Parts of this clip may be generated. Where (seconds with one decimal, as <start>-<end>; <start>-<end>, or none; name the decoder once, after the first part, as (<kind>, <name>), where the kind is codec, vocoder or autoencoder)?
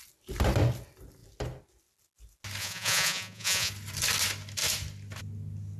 2.6-3.7 (vocoder, Vocos)